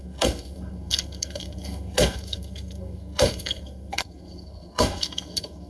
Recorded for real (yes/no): no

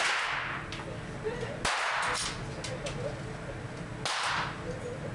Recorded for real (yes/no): yes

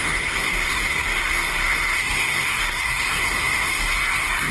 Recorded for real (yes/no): no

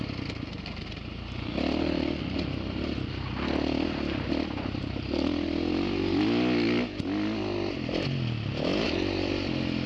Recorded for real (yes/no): yes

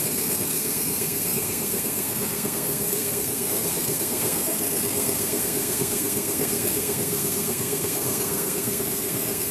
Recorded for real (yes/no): no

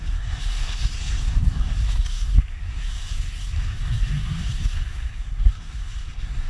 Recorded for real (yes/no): no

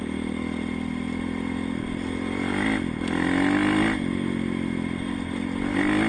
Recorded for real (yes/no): yes